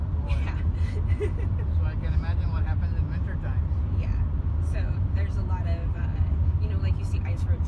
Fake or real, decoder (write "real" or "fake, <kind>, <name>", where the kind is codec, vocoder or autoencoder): real